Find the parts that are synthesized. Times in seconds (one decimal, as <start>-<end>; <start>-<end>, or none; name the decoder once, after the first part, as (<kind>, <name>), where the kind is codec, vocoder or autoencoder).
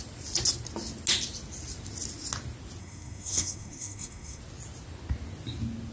2.8-4.4 (codec, SNAC)